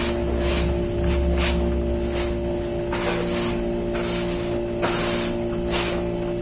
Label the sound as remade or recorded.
recorded